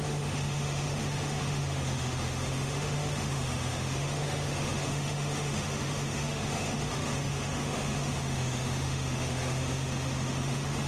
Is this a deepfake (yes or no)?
yes